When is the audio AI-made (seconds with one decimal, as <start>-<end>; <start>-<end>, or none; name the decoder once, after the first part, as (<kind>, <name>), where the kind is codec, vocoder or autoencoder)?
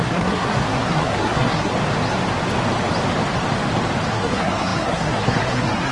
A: 0.0-1.7 (codec, SNAC); 4.1-5.9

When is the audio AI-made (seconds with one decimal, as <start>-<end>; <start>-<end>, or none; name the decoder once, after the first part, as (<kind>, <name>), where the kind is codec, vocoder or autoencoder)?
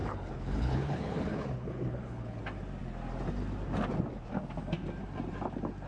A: 0.0-2.4 (codec, HILCodec)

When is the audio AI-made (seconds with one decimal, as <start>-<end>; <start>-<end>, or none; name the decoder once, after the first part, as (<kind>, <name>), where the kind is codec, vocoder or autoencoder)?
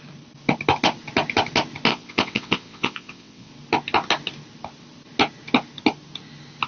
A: 1.9-3.5 (vocoder, WaveNeXt)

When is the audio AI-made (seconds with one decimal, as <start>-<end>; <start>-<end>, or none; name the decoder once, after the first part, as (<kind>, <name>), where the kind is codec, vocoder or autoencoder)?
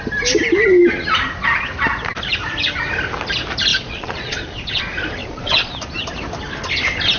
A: 3.7-4.8 (vocoder, Vocos); 5.2-5.7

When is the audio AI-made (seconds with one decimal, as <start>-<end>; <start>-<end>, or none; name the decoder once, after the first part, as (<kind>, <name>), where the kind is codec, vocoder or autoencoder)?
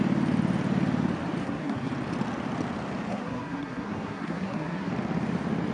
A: 1.4-1.9 (codec, SNAC); 3.1-4.9